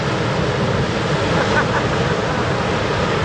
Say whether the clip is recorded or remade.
recorded